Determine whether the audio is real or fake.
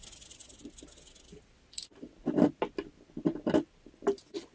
real